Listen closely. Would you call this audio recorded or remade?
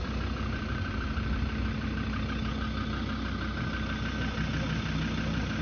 recorded